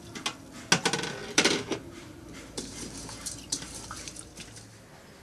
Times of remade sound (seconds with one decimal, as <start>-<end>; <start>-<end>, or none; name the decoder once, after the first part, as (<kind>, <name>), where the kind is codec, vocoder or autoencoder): 1.2-4.3 (vocoder, BigVGAN v2)